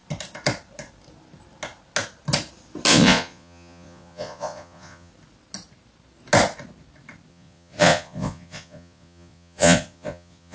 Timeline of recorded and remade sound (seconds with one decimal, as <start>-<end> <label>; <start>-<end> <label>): 0.0-2.9 recorded; 2.9-5.1 remade; 5.1-7.3 recorded; 7.3-10.5 remade